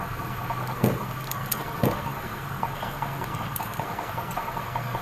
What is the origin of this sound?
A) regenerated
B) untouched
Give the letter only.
A